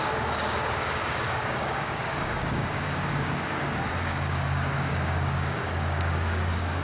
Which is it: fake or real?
fake